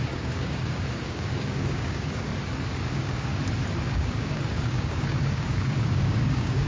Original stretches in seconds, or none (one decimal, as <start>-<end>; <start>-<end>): 2.3-2.8; 3.3-3.8